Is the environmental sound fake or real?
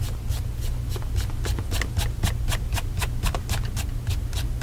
real